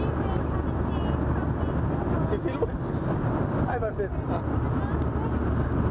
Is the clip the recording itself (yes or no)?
yes